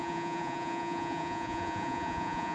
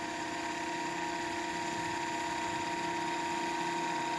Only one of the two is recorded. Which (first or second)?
second